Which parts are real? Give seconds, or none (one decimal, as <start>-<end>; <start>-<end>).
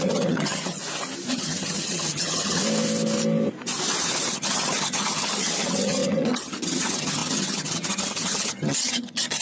0.8-1.3; 2.6-4.3